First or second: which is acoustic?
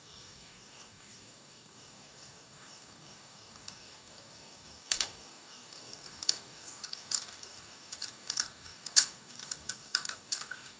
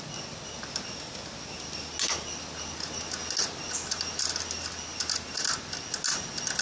second